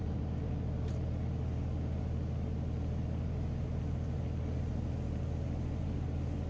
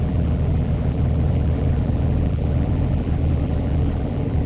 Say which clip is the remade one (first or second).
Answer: second